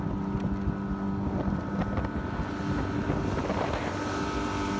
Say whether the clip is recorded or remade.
recorded